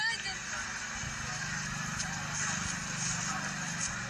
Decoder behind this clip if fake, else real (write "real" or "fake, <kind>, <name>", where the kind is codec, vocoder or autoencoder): real